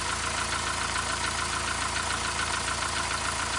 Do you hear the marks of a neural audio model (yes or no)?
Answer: no